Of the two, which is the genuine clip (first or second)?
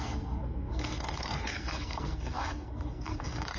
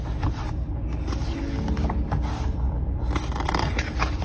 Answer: second